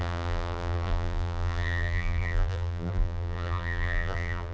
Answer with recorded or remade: remade